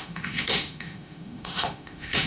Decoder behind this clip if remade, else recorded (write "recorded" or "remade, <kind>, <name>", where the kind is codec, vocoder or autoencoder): remade, autoencoder, DAC-VAE